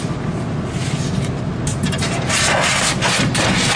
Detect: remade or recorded recorded